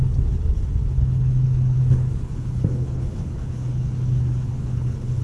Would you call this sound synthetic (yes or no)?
yes